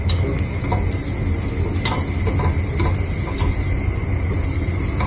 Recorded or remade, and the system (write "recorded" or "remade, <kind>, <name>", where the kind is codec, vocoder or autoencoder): recorded